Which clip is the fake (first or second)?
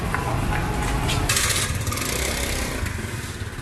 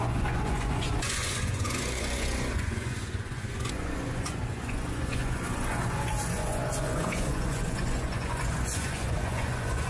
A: second